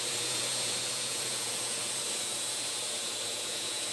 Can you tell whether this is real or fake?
fake